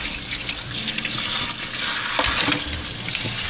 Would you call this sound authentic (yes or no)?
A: yes